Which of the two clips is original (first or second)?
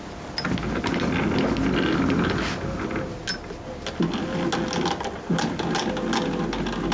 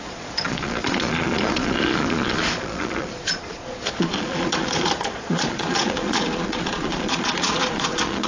first